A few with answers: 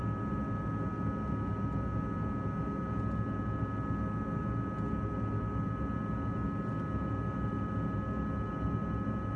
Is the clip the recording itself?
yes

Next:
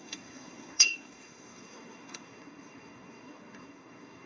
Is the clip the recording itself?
no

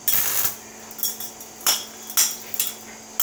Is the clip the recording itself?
yes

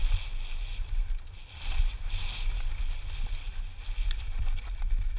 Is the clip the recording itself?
yes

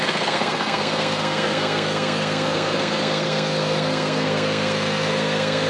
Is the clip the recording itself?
no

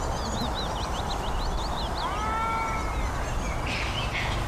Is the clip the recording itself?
yes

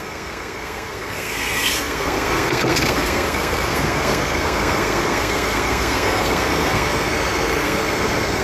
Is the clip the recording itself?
no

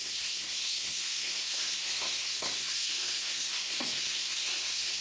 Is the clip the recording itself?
no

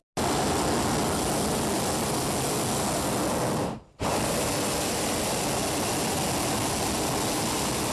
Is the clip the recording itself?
yes